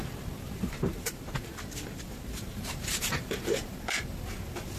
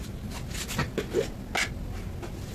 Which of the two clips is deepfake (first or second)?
first